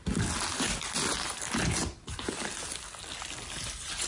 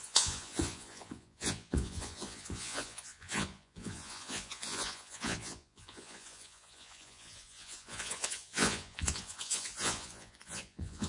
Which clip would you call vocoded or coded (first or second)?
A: second